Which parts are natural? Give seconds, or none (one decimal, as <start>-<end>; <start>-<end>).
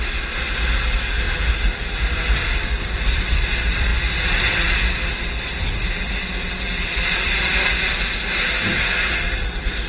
0.0-9.9